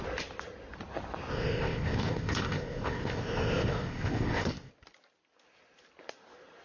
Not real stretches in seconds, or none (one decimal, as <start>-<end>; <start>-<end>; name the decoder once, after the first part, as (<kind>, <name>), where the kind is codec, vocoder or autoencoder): 1.3-4.7 (codec, ZipCodec)